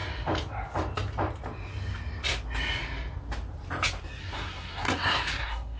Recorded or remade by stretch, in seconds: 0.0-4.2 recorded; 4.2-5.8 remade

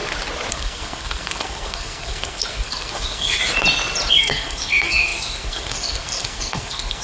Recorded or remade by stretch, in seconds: 0.0-0.5 recorded; 0.5-3.4 remade; 3.4-4.1 recorded; 4.1-7.0 remade